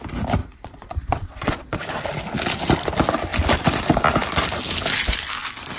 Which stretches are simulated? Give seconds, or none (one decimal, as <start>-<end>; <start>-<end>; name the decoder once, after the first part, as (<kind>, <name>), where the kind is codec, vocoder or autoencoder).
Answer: 0.4-1.9 (vocoder, Vocos)